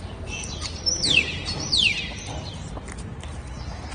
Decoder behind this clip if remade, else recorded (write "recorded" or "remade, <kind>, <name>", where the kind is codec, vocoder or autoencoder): recorded